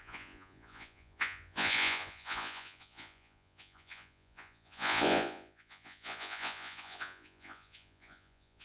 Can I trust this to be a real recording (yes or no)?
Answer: no